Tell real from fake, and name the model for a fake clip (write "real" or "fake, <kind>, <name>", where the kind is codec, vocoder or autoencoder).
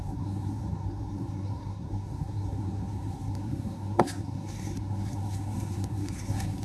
fake, codec, SNAC